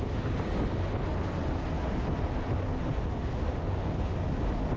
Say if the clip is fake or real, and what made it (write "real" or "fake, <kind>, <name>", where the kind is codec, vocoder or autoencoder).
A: real